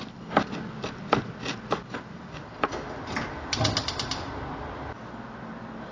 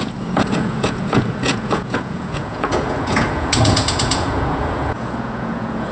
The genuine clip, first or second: first